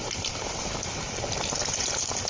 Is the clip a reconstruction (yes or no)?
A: yes